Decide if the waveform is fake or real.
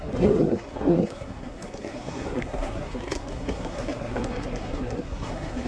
fake